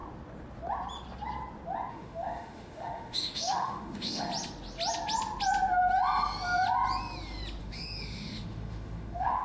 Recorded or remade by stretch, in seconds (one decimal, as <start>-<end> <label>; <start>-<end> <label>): 0.0-1.9 recorded; 1.9-4.3 remade; 4.3-7.6 recorded; 7.6-9.4 remade